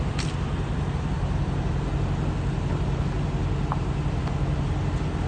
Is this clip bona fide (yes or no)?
yes